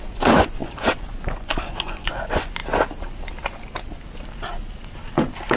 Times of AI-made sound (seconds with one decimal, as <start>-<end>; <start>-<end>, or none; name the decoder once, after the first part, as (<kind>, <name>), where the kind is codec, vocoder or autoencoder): 0.0-2.6 (vocoder, Vocos)